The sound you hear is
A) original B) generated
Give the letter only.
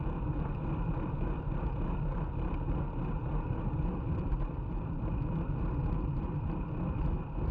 A